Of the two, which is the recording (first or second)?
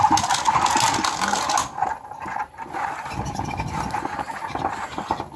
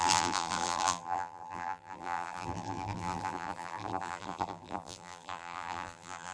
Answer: first